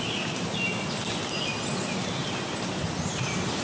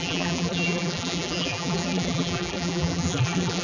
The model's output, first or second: second